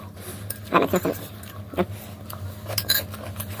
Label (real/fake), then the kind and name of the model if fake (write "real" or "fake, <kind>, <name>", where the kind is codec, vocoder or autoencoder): fake, vocoder, BigVGAN v2